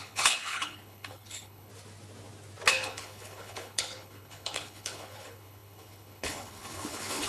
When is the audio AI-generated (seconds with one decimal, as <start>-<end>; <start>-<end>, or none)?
0.0-1.7; 2.7-7.3